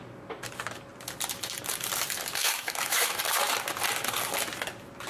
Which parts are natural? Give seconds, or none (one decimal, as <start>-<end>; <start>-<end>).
0.0-2.4; 3.1-5.1